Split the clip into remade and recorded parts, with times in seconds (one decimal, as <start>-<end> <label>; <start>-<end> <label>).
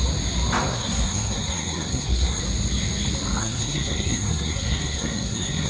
0.0-0.7 recorded; 0.7-2.4 remade; 2.4-3.4 recorded; 3.4-5.7 remade